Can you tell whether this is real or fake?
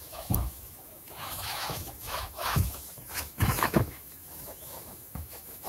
fake